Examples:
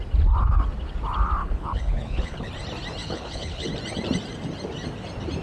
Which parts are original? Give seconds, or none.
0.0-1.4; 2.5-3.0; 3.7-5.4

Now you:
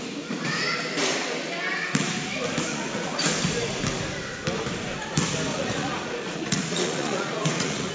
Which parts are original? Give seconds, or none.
0.0-2.7; 3.2-5.5